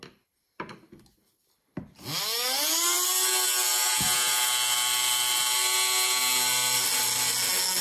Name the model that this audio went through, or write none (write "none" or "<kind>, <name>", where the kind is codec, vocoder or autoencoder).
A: none